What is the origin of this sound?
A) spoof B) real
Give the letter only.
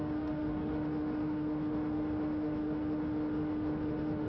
A